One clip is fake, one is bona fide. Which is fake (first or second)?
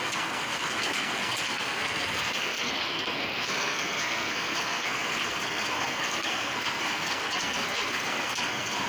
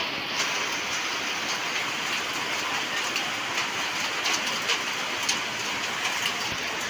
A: first